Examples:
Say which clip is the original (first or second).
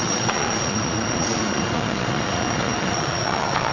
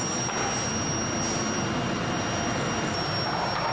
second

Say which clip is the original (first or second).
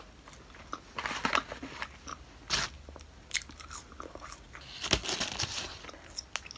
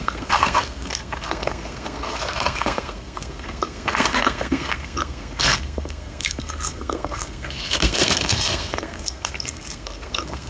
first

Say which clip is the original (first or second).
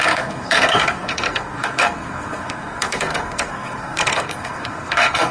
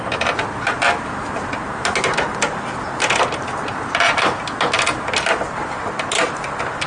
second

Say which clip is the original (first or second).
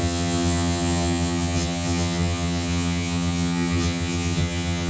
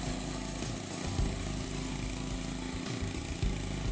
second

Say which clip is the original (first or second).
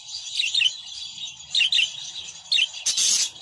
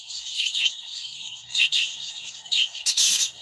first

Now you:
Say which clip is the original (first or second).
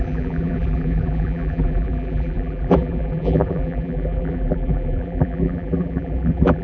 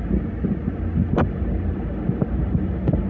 second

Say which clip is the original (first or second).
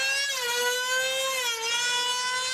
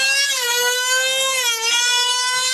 first